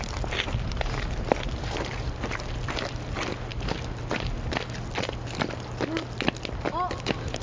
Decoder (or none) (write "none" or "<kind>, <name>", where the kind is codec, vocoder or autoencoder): none